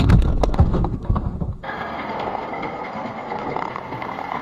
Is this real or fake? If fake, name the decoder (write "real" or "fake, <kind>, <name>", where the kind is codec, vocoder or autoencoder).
fake, codec, SNAC